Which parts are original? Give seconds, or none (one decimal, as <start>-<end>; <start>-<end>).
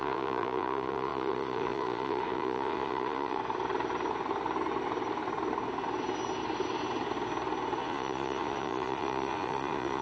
3.4-7.8